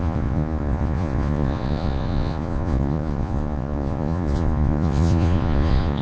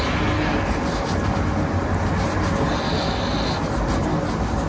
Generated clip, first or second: first